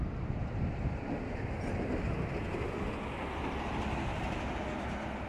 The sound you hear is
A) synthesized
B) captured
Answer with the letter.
B